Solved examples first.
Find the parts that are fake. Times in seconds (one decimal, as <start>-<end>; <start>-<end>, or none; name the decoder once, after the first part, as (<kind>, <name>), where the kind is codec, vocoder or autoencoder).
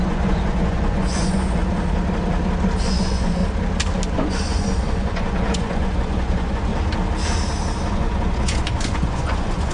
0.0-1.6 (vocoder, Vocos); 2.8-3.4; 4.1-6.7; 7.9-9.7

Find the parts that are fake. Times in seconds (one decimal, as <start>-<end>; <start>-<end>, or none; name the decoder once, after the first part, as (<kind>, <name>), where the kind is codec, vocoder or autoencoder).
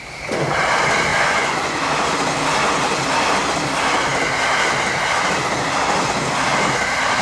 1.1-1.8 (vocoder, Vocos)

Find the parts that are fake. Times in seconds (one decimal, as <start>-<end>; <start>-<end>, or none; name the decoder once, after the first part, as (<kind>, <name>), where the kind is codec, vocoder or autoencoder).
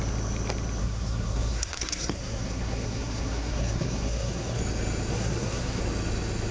0.8-4.6 (codec, SNAC); 5.1-5.8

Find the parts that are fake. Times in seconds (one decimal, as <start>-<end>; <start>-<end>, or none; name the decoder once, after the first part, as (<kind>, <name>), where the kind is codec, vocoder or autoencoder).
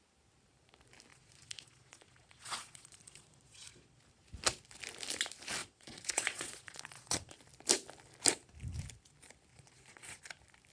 1.1-4.0 (vocoder, Vocos); 5.6-7.4; 9.5-10.2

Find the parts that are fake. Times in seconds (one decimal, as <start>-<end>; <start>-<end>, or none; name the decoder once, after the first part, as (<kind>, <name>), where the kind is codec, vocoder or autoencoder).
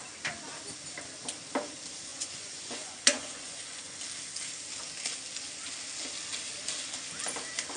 2.1-4.0 (vocoder, Vocos)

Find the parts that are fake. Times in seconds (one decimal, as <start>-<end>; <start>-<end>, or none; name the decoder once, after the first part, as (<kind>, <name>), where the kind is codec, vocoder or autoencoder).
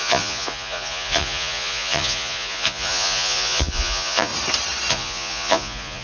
0.0-4.3 (vocoder, Vocos); 4.9-6.0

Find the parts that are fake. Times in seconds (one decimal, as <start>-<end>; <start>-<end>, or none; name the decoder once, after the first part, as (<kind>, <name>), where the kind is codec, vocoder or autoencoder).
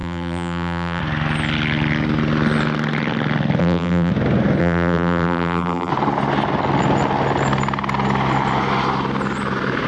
0.0-1.0 (vocoder, BigVGAN v2); 3.6-4.1; 4.6-5.9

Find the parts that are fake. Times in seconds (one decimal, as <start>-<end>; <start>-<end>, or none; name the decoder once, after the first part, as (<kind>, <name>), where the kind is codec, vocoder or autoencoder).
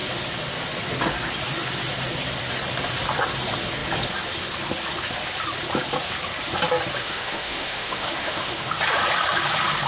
7.0-8.8 (autoencoder, DAC-VAE)